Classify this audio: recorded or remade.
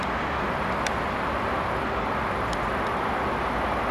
recorded